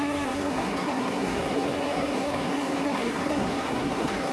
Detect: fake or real fake